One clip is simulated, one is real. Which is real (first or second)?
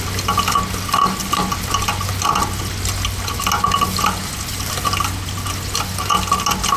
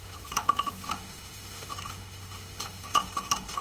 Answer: first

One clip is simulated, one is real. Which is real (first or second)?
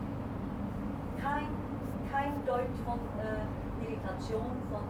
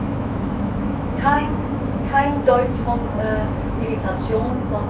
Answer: first